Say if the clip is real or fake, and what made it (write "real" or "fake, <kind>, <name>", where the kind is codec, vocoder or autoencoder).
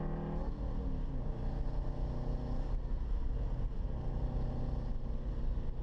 real